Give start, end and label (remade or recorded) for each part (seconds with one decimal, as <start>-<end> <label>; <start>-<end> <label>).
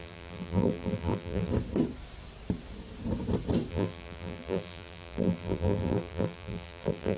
0.0-1.5 remade; 1.5-3.7 recorded; 3.7-7.2 remade